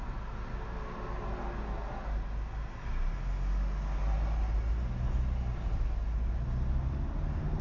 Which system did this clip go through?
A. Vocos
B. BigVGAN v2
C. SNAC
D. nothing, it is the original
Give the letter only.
D